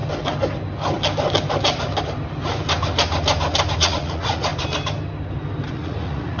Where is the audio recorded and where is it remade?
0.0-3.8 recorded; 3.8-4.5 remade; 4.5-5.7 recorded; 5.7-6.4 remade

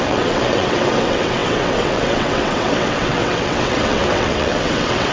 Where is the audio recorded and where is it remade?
0.0-5.1 remade